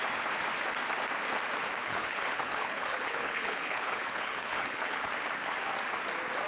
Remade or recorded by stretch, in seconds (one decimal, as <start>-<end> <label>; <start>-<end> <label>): 0.0-1.8 recorded; 1.8-5.1 remade; 5.1-6.5 recorded

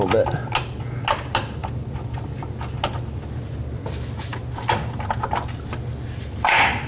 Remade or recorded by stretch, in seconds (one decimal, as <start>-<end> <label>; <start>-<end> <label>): 0.0-6.9 recorded

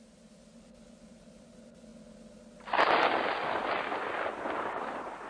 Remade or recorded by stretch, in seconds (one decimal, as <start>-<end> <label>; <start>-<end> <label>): 0.0-5.3 recorded